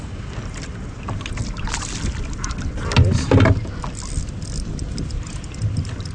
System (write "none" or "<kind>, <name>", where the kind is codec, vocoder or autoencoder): none